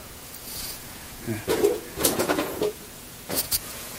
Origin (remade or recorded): remade